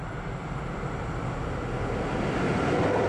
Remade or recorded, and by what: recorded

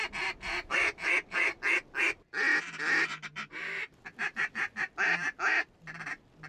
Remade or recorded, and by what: recorded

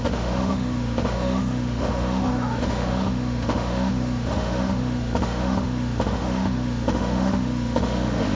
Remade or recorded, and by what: remade, autoencoder, DAC-VAE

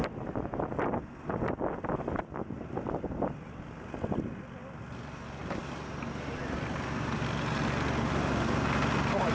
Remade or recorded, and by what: recorded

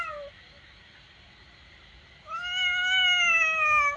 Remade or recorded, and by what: recorded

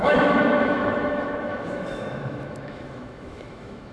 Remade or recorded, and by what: remade, autoencoder, DAC-VAE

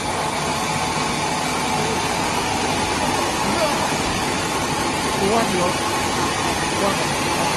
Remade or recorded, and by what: recorded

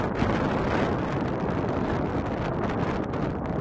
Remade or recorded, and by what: recorded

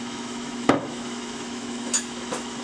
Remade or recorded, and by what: remade, autoencoder, DAC-VAE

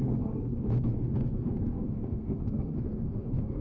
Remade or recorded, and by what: remade, autoencoder, DAC-VAE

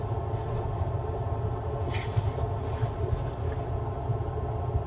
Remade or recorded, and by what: recorded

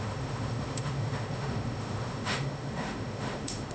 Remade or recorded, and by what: remade, autoencoder, DAC-VAE